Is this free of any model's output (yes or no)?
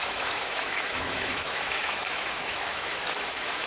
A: no